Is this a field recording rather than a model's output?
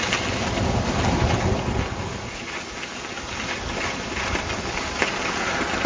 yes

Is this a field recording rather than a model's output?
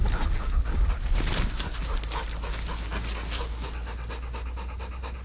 yes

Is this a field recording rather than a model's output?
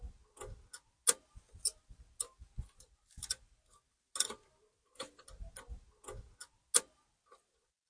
yes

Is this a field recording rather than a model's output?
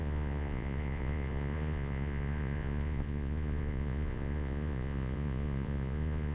no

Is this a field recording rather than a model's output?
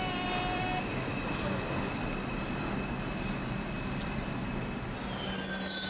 yes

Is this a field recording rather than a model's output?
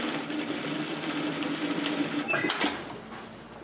yes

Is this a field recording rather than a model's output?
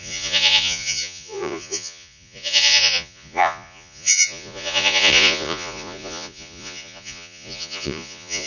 no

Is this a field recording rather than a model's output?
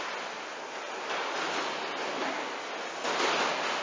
yes